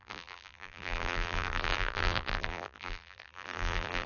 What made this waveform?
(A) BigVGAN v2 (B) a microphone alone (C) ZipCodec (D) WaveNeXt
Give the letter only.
A